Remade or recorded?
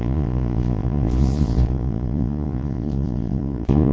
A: remade